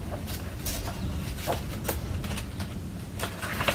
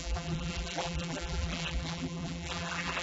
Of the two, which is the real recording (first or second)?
first